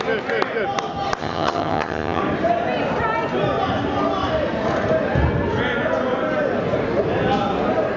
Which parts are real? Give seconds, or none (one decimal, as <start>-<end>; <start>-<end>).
0.0-1.2; 2.2-8.0